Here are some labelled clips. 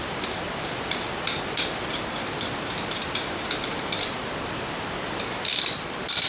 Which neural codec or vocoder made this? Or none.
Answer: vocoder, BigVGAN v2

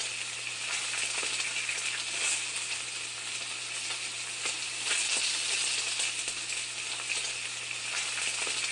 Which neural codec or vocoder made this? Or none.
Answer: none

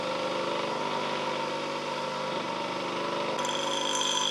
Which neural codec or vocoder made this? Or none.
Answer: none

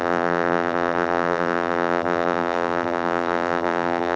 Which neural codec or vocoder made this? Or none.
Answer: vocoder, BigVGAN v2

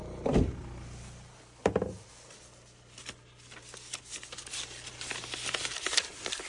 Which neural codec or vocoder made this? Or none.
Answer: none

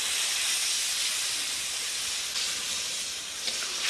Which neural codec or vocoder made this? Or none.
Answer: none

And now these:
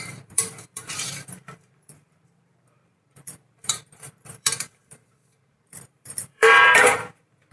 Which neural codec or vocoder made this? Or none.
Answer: vocoder, BigVGAN v2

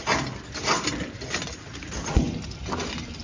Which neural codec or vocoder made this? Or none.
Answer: none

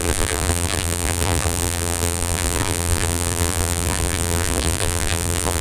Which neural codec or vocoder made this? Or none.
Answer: vocoder, BigVGAN v2